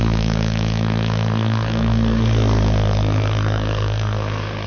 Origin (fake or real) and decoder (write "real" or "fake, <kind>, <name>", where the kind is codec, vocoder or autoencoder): fake, codec, SNAC